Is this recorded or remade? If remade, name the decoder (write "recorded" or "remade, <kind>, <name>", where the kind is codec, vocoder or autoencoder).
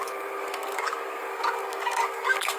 remade, codec, SNAC